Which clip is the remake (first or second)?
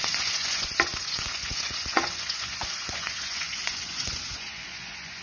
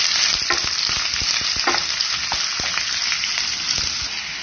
first